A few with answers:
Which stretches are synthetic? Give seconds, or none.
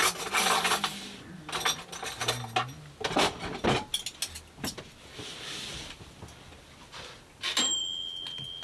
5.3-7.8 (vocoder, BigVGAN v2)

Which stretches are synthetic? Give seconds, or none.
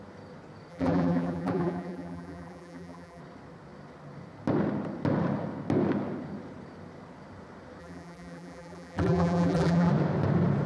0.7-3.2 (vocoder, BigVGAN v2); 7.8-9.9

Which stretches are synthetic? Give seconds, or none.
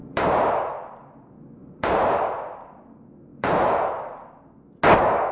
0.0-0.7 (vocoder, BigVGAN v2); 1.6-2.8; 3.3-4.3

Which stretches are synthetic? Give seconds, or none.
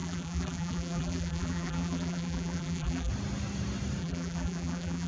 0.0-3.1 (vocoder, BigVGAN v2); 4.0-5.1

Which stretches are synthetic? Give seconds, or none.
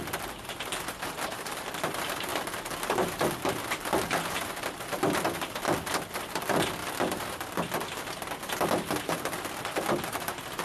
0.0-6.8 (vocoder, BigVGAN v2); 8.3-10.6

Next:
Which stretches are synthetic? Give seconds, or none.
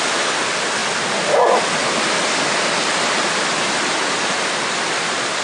none